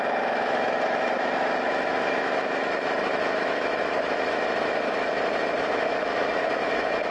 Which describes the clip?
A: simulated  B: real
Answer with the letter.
A